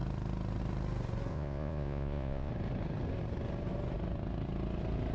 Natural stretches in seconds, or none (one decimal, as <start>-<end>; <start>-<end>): 0.0-1.3; 2.5-5.1